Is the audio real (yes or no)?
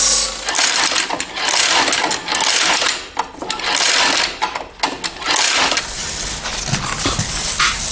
yes